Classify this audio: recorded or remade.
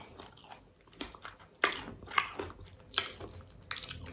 recorded